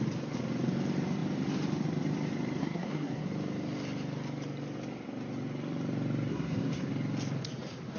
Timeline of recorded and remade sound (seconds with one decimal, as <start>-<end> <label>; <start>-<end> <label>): 0.0-2.6 recorded; 2.6-3.3 remade; 3.3-6.3 recorded; 6.3-6.9 remade; 6.9-8.0 recorded